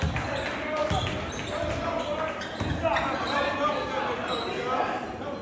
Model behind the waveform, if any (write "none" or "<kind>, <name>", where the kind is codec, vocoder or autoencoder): none